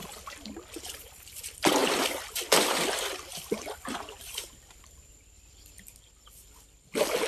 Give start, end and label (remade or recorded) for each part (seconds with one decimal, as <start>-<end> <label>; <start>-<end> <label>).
0.0-1.0 recorded; 1.0-7.3 remade